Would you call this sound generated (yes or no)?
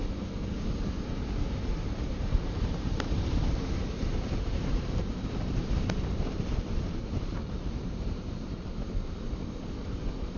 yes